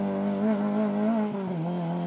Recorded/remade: recorded